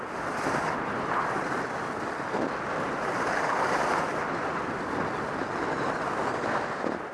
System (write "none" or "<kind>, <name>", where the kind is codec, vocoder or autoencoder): none